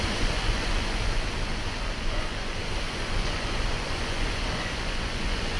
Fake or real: fake